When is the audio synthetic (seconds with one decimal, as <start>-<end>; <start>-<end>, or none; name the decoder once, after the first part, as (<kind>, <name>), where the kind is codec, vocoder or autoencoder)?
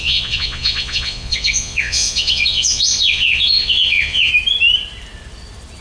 0.0-4.3 (vocoder, Vocos)